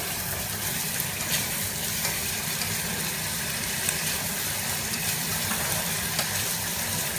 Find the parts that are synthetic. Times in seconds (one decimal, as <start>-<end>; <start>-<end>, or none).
0.0-2.4; 3.7-7.2